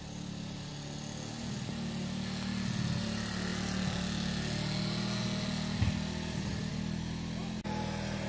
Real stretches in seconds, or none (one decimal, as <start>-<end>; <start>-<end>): 0.0-8.3

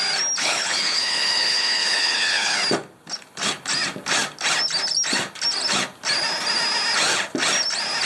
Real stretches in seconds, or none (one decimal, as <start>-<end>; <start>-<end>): 0.0-0.4; 2.6-8.1

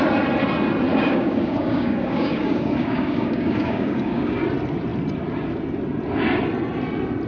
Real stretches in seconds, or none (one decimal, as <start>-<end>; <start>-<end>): 0.0-0.9; 4.4-7.3

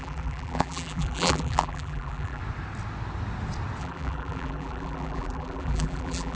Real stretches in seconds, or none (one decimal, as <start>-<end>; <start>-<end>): 2.4-3.8

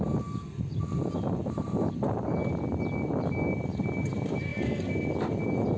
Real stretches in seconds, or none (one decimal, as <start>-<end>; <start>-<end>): 0.0-5.8